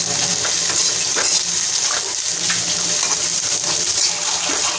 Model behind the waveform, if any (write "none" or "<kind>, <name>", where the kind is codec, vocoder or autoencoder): none